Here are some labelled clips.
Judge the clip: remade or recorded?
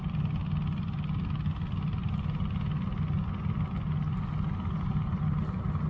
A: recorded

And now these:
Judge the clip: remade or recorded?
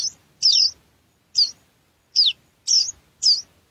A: recorded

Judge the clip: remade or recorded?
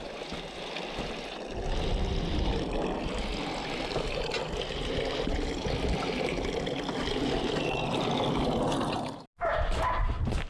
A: recorded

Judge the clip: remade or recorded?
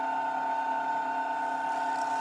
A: recorded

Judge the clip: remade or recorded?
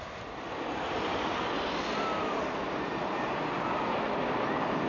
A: recorded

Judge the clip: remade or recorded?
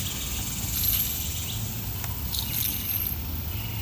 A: recorded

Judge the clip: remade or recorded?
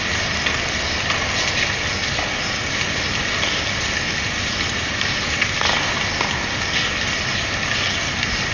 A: recorded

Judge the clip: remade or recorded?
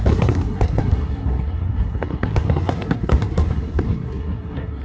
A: remade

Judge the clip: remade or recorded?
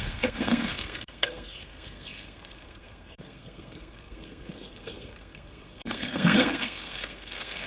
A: remade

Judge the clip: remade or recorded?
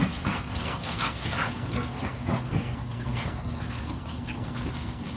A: remade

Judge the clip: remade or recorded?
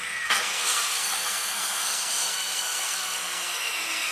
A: remade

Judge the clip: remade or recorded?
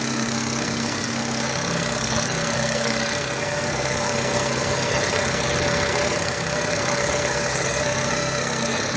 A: remade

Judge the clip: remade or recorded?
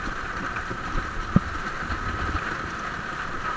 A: recorded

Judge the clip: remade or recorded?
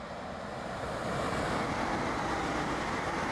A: recorded